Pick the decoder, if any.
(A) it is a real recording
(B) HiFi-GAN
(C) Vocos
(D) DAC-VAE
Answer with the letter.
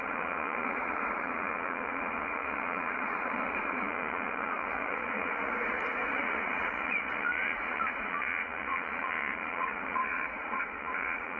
C